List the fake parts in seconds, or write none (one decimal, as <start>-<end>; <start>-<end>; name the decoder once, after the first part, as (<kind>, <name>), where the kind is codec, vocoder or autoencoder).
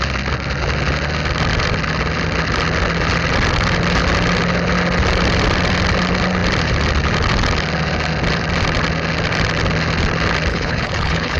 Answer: 10.5-11.4 (codec, HILCodec)